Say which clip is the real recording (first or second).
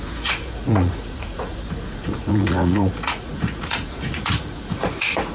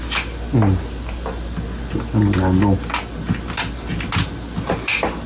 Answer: second